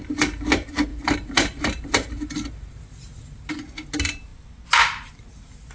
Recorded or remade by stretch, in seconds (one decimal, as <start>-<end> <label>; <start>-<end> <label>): 0.0-0.9 recorded; 0.9-3.5 remade; 3.5-5.7 recorded